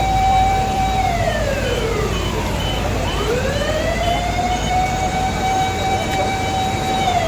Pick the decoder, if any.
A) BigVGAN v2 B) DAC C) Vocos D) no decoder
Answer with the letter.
A